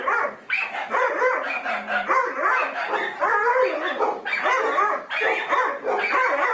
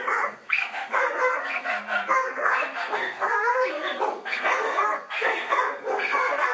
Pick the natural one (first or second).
first